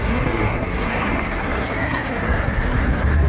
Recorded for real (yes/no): no